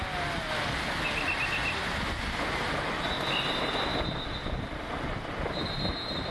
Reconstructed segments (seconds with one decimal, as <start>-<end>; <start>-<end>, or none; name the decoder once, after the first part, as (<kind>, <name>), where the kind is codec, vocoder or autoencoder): none